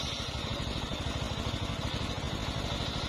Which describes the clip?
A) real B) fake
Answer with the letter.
A